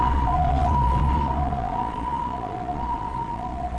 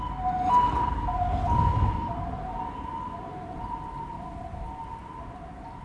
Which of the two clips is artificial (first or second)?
first